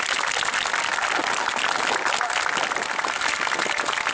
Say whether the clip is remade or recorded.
recorded